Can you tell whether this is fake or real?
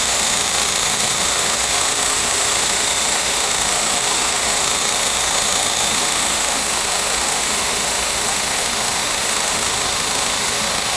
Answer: fake